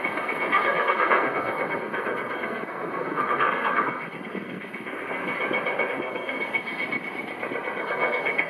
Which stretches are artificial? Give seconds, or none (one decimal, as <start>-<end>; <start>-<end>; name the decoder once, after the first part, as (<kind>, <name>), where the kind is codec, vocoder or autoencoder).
0.0-5.2 (codec, SNAC); 5.9-6.8; 7.8-8.5